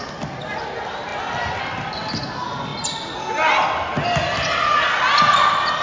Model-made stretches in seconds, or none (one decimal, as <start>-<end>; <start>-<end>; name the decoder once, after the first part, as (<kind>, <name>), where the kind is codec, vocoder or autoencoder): none